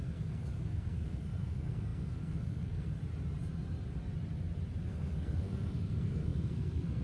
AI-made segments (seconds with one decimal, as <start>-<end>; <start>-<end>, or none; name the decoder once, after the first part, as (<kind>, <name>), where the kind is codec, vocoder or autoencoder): 0.0-3.0 (codec, SNAC); 4.8-7.0